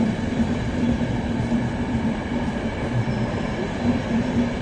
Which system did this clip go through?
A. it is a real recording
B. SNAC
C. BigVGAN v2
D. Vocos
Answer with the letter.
C